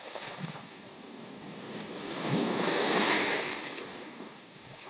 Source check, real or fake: fake